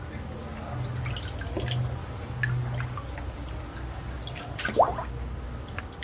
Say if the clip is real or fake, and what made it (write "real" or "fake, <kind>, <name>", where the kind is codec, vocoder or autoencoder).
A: real